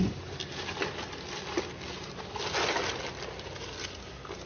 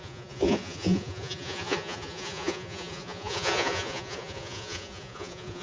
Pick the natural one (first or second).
first